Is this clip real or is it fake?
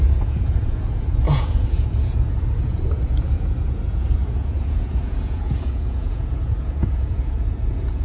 fake